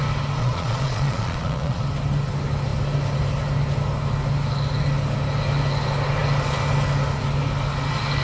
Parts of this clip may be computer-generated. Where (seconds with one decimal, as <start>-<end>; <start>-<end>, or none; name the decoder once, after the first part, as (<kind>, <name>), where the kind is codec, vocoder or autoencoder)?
0.4-1.8 (vocoder, Vocos)